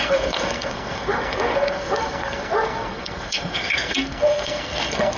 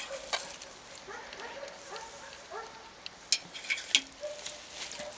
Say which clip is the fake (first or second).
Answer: first